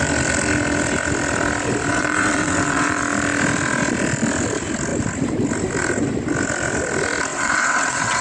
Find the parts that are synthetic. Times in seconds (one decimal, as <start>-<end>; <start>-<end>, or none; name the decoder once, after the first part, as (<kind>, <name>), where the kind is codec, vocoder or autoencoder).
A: 1.9-3.0 (vocoder, WaveNeXt); 7.3-8.2